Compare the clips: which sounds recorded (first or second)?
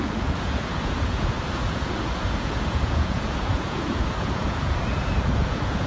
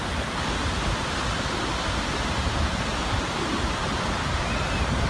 second